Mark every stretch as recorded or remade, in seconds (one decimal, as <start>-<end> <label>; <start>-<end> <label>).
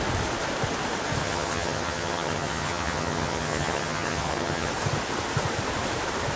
0.0-1.2 recorded; 1.2-4.7 remade; 4.7-6.4 recorded